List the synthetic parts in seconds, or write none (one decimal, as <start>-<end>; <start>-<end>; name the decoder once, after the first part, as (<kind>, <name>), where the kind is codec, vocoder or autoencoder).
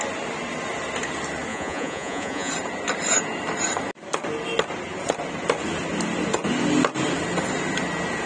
1.5-2.5 (vocoder, Vocos)